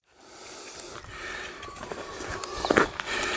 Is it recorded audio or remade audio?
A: remade